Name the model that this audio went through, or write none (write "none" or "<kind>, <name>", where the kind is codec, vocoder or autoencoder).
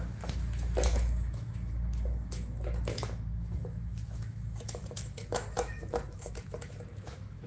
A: autoencoder, DAC-VAE